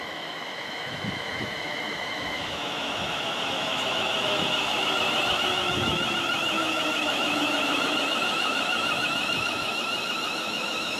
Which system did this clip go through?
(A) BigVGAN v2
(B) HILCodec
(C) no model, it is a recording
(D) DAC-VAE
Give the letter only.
D